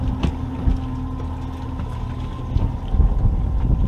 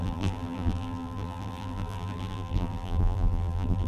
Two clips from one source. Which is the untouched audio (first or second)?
first